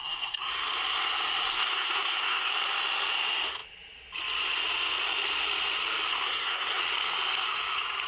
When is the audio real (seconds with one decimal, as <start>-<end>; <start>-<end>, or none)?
0.5-1.5; 2.5-6.1; 6.8-8.1